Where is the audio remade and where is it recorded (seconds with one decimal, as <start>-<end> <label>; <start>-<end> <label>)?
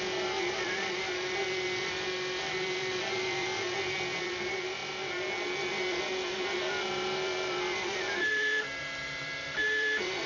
0.0-4.8 remade; 4.8-5.7 recorded; 5.7-10.3 remade